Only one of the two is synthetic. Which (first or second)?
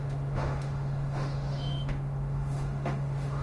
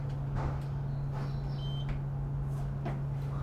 first